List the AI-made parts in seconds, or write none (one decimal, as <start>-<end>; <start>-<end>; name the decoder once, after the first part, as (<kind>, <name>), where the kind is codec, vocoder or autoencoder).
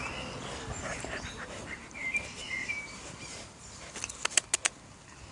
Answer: 0.9-3.8 (vocoder, BigVGAN v2)